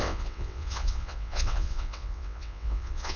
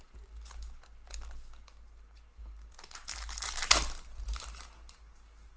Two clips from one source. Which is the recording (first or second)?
second